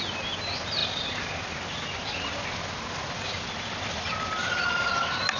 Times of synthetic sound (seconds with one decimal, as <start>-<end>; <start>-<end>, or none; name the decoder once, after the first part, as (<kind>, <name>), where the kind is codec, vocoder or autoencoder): none

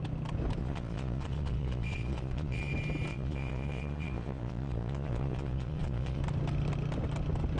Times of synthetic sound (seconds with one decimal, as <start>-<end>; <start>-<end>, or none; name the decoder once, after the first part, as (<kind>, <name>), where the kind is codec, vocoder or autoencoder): 0.6-2.7 (vocoder, Vocos); 3.1-6.2

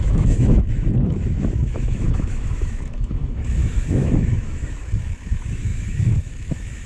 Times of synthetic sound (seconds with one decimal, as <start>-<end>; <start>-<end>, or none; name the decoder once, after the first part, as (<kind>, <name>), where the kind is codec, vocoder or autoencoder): 0.0-6.9 (autoencoder, DAC-VAE)

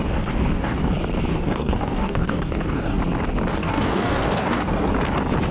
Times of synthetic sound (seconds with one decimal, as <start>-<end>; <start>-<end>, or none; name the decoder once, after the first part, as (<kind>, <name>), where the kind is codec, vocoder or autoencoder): 0.0-0.9 (codec, DAC); 1.3-3.0; 3.6-4.9